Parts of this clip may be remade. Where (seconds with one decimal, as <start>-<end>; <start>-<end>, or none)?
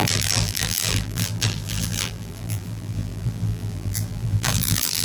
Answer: 0.0-5.0